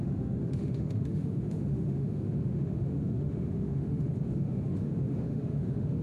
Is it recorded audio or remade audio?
remade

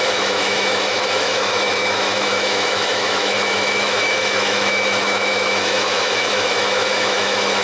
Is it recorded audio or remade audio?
remade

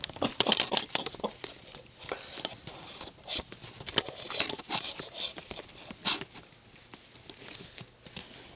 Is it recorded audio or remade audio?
recorded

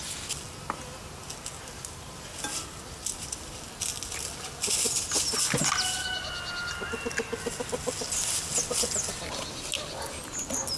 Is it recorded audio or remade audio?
recorded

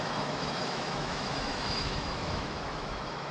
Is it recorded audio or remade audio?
remade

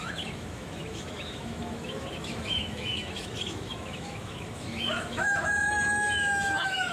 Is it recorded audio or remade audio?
remade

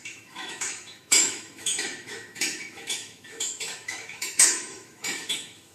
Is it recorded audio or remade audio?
remade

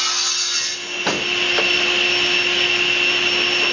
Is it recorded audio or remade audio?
recorded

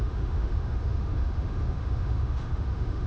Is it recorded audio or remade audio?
remade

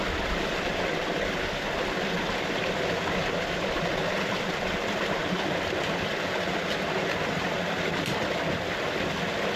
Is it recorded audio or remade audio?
recorded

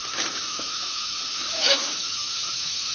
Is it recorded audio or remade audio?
remade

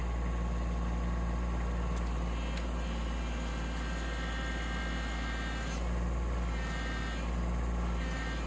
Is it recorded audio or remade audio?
recorded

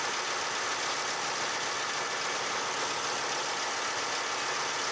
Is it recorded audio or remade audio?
recorded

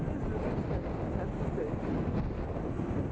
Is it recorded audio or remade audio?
recorded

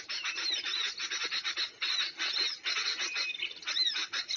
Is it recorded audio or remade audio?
recorded